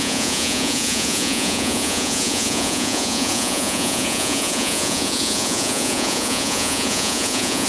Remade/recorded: remade